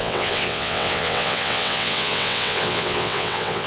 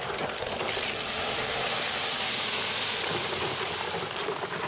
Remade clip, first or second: first